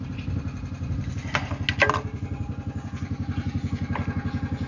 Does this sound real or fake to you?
real